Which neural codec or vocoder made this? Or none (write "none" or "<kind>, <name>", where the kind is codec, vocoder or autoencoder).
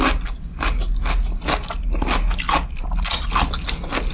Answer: none